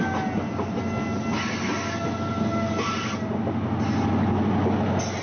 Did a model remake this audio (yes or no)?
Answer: no